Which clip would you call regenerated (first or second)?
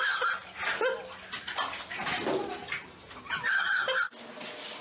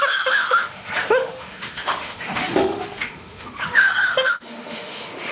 second